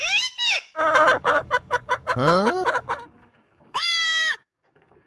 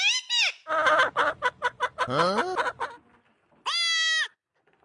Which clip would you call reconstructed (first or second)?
first